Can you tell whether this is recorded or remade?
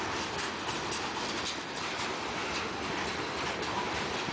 recorded